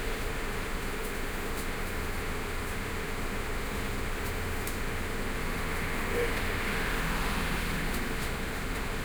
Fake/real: fake